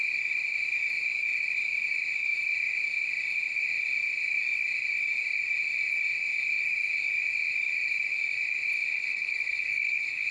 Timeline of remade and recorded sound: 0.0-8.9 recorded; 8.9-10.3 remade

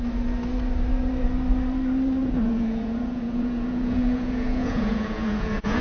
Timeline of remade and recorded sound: 0.0-2.2 recorded; 2.2-5.8 remade

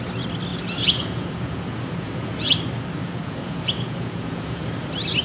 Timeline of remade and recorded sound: 0.0-0.5 recorded; 0.5-2.6 remade; 2.6-3.0 recorded; 3.0-4.7 remade; 4.7-5.2 recorded

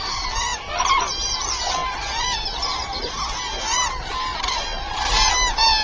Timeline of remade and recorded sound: 0.0-5.8 recorded